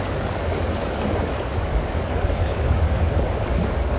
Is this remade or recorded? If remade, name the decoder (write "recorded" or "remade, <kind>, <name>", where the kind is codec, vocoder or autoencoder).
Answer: remade, codec, DAC